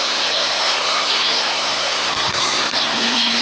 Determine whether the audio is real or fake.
fake